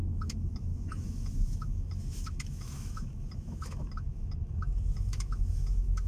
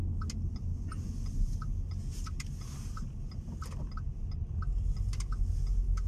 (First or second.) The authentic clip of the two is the second